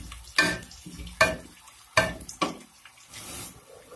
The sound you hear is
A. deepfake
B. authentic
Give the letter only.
B